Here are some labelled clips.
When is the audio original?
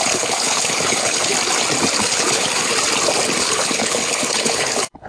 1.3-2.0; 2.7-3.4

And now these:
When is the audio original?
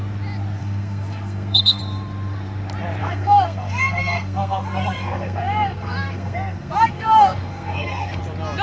0.0-0.6; 1.8-3.0; 8.2-8.6